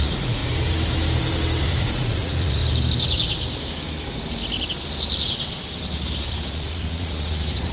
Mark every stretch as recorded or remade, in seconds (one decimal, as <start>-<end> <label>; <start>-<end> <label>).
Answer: 0.0-0.4 remade; 0.4-1.6 recorded; 1.6-2.6 remade; 2.6-6.3 recorded; 6.3-7.7 remade